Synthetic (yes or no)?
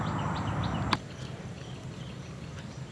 no